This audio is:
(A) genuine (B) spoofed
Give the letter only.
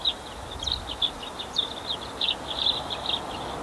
A